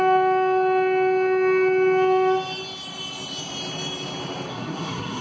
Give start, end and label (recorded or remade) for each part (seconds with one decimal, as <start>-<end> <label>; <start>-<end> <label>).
0.0-4.5 recorded; 4.5-5.2 remade